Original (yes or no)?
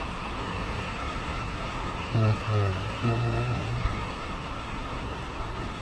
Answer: no